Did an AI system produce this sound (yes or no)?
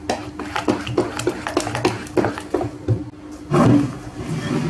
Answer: no